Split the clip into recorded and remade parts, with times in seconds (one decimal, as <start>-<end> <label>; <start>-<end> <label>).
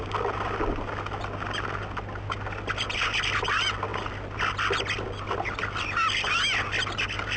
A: 0.0-7.4 recorded